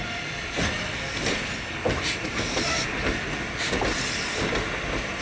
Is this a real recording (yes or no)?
yes